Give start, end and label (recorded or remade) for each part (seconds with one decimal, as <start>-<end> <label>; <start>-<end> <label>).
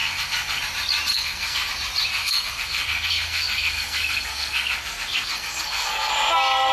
0.0-0.6 remade; 0.6-1.1 recorded; 1.1-1.7 remade; 1.7-2.1 recorded; 2.1-6.1 remade; 6.1-6.7 recorded